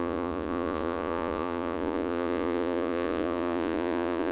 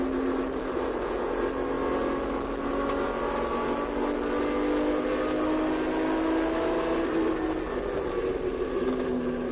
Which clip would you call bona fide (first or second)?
second